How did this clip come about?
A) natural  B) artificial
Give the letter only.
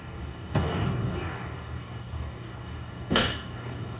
B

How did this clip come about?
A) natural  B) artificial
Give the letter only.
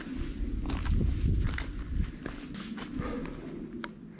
A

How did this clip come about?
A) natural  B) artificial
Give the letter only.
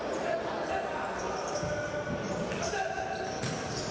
A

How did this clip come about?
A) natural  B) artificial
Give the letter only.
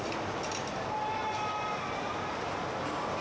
A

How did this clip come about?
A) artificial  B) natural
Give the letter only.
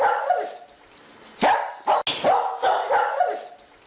B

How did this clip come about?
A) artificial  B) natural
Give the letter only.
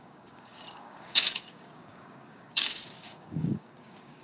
A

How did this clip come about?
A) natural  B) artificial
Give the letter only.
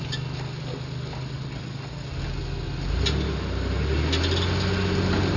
A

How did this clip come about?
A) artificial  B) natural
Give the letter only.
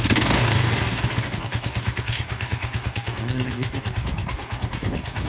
A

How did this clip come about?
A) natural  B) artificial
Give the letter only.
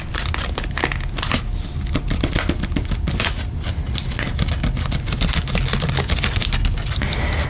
A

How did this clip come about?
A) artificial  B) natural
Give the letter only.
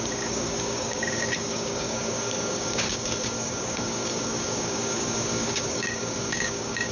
A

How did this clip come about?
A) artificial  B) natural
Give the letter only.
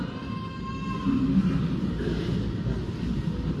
B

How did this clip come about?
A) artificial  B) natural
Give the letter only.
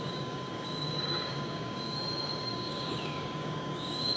A